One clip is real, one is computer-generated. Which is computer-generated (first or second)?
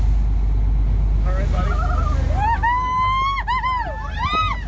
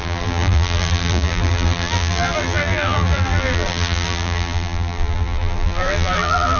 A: second